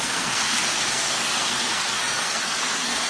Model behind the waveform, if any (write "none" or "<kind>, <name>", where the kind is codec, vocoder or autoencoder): codec, SNAC